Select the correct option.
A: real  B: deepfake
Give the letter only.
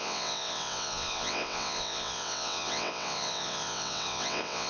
B